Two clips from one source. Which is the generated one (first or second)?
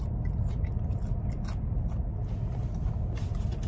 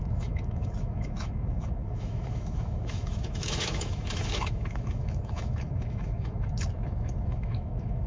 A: second